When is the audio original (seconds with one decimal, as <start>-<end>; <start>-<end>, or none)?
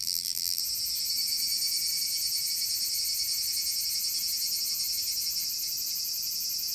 0.6-6.7